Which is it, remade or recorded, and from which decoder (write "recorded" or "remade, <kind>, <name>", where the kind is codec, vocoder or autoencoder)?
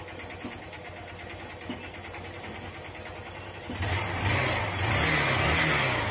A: recorded